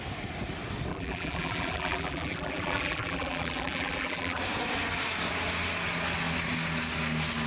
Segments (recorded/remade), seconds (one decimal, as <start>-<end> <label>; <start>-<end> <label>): 0.0-0.9 recorded; 0.9-4.4 remade; 4.4-7.5 recorded